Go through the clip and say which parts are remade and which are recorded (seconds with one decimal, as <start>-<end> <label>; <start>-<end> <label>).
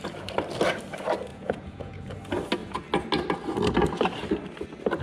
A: 0.0-1.3 recorded; 1.3-2.1 remade; 2.1-5.0 recorded